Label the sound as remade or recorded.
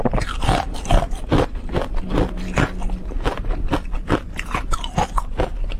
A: recorded